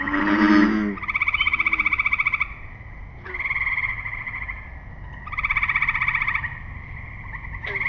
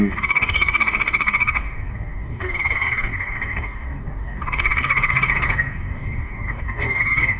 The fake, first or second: second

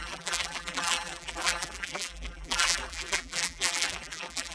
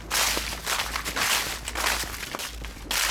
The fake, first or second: first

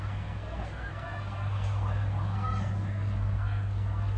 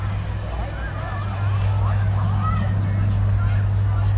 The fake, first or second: first